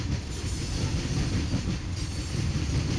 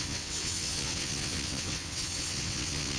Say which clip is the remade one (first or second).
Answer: second